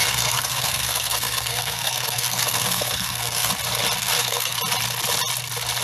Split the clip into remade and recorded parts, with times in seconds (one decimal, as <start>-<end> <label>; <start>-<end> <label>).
0.0-3.5 remade; 3.5-4.0 recorded; 4.0-4.6 remade; 4.6-5.8 recorded